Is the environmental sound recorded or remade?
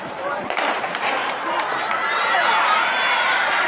remade